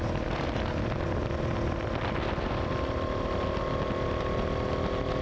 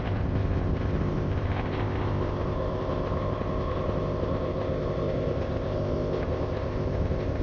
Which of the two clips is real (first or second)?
first